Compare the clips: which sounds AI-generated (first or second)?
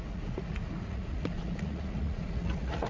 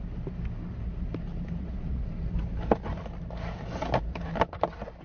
first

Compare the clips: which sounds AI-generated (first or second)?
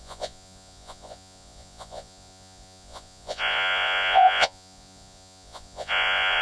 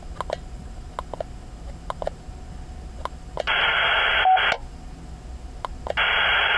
first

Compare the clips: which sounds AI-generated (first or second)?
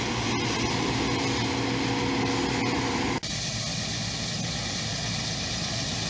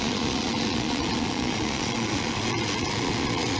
second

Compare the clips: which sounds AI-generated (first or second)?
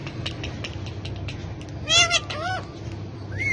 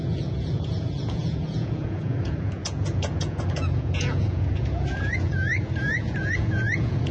second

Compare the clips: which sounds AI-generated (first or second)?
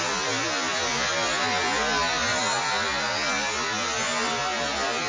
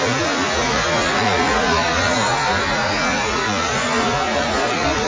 second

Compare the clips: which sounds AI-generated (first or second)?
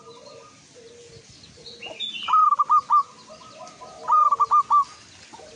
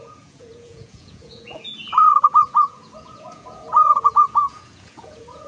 second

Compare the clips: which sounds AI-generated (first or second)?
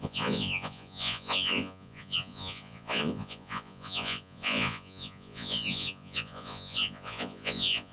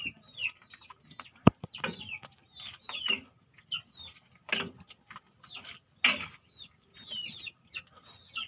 first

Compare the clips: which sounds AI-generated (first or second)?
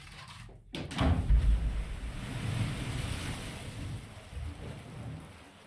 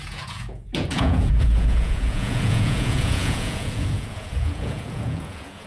second